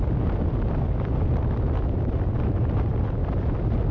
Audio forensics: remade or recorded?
recorded